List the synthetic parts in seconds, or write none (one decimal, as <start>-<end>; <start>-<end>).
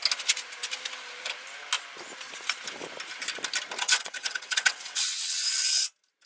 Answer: 3.8-5.4